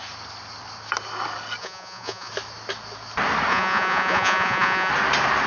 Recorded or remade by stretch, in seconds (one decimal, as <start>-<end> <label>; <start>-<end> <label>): 0.0-1.6 recorded; 1.6-2.3 remade; 2.3-3.5 recorded; 3.5-4.9 remade; 4.9-5.5 recorded